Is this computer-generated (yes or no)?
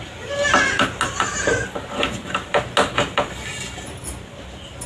no